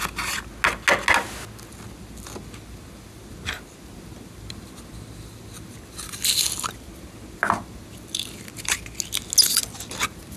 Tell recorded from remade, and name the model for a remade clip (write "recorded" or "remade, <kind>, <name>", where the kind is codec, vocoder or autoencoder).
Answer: recorded